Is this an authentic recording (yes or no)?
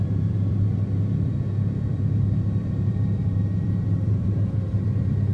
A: no